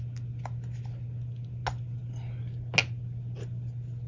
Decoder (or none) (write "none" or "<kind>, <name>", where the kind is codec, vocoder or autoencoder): none